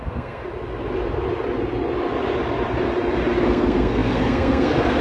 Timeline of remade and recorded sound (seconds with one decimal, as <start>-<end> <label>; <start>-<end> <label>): 0.0-0.4 remade; 0.4-3.4 recorded; 3.4-5.0 remade